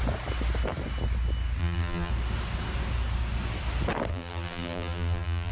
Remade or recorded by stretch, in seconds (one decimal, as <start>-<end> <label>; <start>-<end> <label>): 0.0-1.6 recorded; 1.6-2.1 remade; 2.1-4.1 recorded; 4.1-5.5 remade